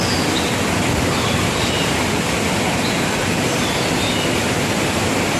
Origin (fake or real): real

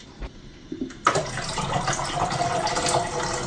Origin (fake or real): real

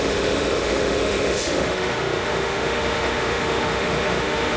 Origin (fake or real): fake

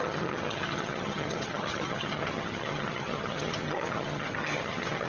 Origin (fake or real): fake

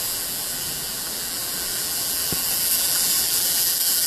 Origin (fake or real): fake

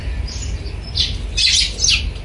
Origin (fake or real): real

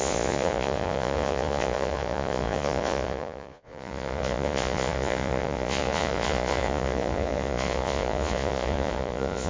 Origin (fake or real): fake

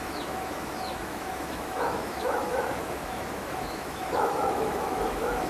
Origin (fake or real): fake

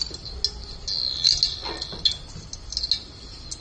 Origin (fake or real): real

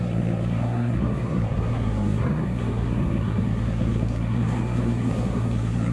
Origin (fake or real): fake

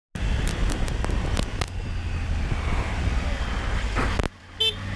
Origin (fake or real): real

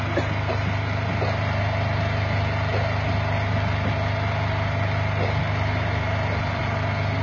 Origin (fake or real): real